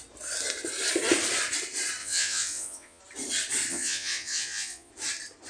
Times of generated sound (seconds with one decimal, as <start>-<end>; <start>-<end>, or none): 2.0-3.0; 3.7-4.9